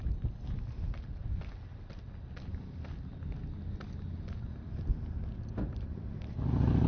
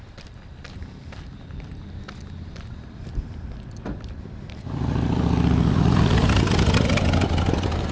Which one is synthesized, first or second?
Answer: second